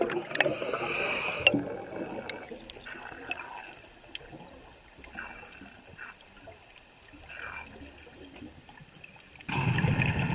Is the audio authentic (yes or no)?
yes